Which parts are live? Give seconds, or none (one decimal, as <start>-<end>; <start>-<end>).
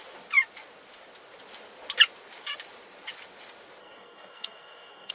0.0-3.8